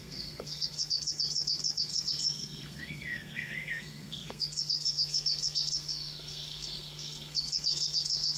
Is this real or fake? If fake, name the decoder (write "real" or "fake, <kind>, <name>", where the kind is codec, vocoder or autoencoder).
fake, codec, SNAC